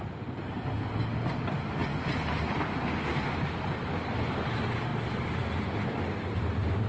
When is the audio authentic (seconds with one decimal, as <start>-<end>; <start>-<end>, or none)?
0.0-6.9